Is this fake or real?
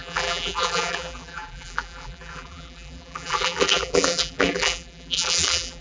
fake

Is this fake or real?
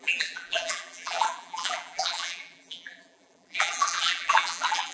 fake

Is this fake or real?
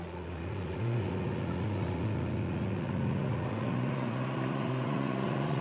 fake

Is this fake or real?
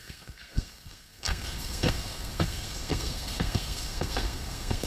fake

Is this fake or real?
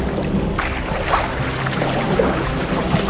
real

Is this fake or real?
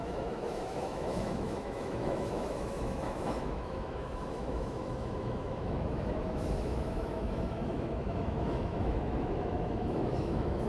fake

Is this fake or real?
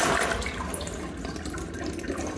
real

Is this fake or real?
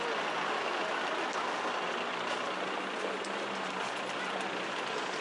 real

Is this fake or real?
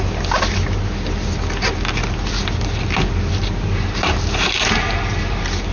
real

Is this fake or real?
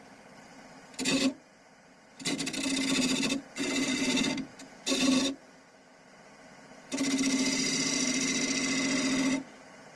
real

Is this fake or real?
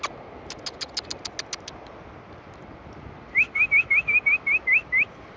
real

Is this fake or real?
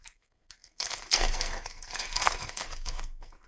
fake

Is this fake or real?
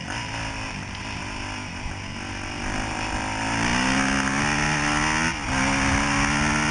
real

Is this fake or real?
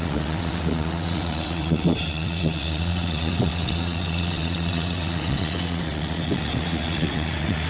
fake